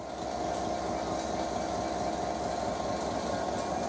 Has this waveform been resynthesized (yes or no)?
no